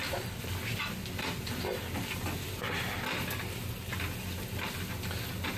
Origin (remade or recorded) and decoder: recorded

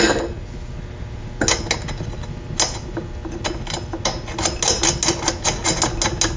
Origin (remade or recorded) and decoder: recorded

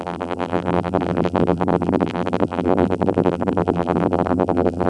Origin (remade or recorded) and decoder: remade, vocoder, BigVGAN v2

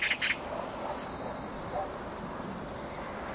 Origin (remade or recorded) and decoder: recorded